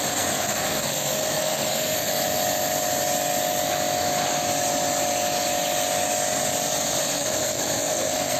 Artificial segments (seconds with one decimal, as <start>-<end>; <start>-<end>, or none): 0.0-2.1; 7.0-8.4